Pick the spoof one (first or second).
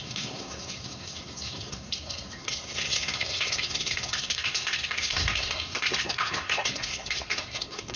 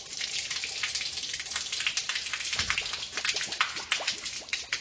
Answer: first